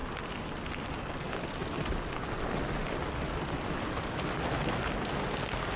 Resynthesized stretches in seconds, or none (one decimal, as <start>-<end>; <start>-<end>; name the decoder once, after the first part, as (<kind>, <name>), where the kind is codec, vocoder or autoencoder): 0.0-1.0 (vocoder, BigVGAN v2)